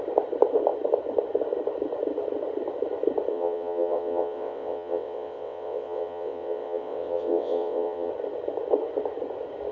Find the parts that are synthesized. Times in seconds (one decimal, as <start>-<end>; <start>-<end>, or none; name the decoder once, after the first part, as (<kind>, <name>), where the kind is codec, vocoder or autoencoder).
3.3-8.1 (vocoder, WaveNeXt)

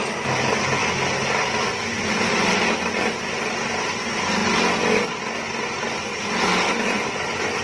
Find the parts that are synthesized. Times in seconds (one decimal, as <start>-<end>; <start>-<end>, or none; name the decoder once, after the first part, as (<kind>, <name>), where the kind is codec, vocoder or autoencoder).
none

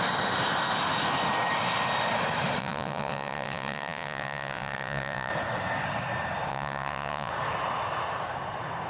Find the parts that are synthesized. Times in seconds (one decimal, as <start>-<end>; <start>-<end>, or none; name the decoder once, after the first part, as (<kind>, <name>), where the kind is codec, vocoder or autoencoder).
2.6-5.3 (vocoder, WaveNeXt); 6.5-7.3